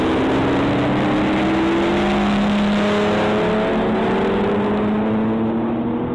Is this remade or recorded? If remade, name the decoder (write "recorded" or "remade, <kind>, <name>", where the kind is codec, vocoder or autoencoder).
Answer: recorded